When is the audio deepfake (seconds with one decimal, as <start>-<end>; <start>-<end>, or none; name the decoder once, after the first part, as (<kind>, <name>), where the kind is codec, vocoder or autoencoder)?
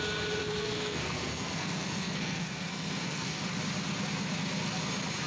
0.4-3.4 (codec, SNAC)